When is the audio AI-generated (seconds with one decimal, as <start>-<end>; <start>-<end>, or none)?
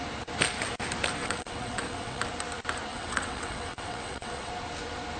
1.2-2.2; 2.9-4.5